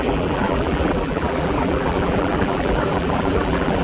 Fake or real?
fake